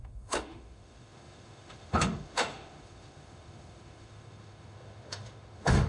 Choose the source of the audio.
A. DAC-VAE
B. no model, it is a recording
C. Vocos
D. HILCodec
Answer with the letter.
A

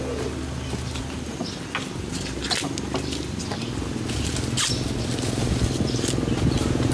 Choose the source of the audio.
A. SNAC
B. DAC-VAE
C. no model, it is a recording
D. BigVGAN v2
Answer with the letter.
C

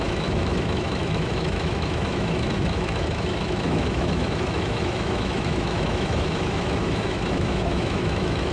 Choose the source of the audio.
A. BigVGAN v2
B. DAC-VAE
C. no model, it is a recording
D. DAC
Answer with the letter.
B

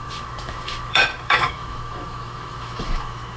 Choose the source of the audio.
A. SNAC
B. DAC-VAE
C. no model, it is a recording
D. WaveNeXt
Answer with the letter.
B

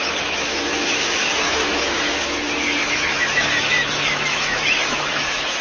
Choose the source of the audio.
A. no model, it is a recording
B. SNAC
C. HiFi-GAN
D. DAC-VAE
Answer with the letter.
D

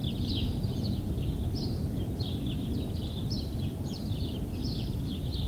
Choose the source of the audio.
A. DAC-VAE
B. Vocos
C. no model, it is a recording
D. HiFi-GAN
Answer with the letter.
C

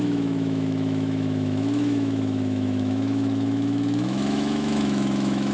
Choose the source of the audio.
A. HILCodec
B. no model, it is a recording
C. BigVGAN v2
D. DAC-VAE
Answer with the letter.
D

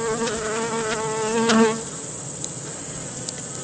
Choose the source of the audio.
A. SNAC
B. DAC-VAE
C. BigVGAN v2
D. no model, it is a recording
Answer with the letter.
D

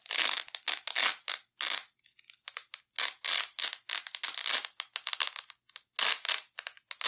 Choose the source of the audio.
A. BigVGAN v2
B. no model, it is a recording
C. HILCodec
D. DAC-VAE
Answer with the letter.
B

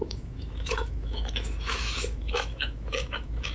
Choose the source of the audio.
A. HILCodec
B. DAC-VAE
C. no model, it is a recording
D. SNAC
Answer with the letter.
B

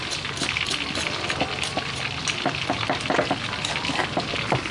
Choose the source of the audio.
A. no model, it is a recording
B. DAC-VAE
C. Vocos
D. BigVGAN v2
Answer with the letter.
A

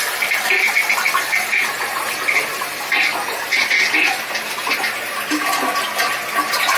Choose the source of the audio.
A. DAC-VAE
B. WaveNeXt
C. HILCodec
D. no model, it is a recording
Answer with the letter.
D